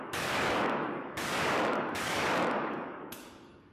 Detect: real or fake fake